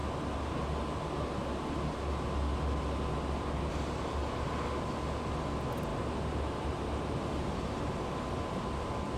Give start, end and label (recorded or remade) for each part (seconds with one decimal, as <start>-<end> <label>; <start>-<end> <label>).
0.0-9.2 recorded